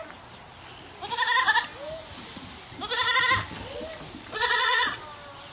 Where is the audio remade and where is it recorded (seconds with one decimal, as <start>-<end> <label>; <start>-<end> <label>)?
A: 0.0-4.2 recorded; 4.2-5.0 remade; 5.0-5.5 recorded

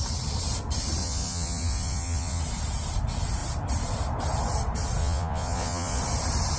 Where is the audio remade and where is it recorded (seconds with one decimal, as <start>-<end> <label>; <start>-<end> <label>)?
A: 0.0-1.0 recorded; 1.0-2.4 remade; 2.4-5.0 recorded; 5.0-6.0 remade; 6.0-6.6 recorded

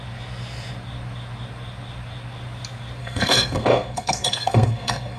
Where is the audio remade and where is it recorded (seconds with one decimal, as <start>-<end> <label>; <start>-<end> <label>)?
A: 0.0-3.0 recorded; 3.0-5.2 remade

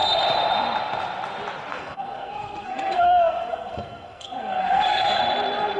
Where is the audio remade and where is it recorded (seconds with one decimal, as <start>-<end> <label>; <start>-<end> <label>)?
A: 0.0-1.7 recorded; 1.7-5.2 remade; 5.2-5.8 recorded

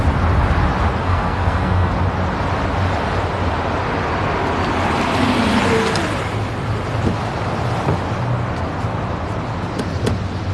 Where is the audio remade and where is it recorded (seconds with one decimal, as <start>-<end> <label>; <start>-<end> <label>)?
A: 0.0-1.0 recorded; 1.0-1.9 remade; 1.9-10.5 recorded